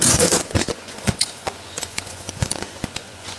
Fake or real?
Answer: fake